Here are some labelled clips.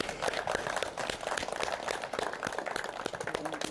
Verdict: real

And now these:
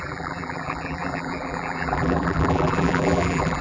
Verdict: fake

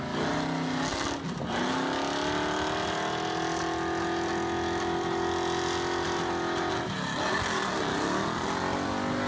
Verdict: real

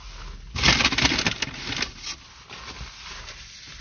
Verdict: real